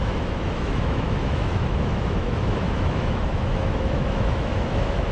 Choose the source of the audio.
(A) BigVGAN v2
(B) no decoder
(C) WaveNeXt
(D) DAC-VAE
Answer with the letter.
D